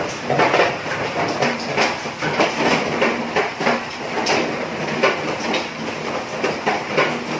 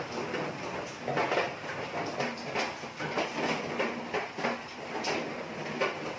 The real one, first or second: second